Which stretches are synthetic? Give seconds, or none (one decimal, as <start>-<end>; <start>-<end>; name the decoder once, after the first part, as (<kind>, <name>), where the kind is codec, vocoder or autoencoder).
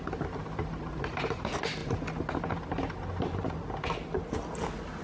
none